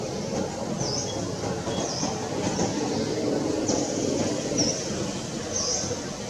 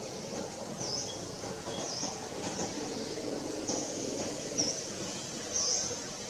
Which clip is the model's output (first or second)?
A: second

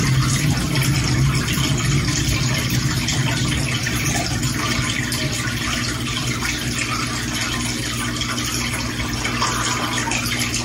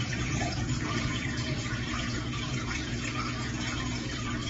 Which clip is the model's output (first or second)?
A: second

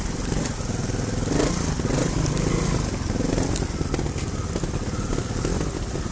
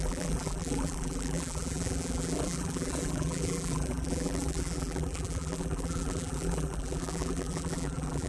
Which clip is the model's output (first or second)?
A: second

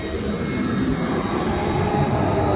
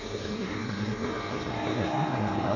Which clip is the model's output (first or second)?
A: second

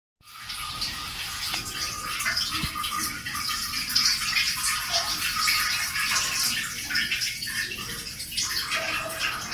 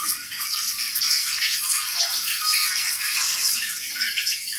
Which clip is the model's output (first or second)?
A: second